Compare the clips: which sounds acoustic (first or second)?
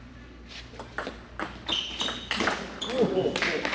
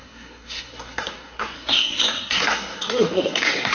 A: first